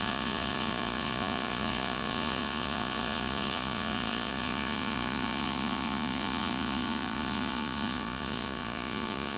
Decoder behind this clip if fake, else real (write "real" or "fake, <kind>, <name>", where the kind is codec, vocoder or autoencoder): fake, vocoder, Vocos